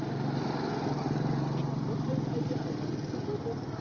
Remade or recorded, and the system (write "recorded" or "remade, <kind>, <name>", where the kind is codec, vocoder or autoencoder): recorded